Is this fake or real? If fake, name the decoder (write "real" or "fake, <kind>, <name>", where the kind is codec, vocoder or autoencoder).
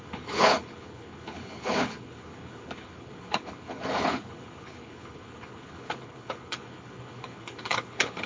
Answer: fake, codec, HILCodec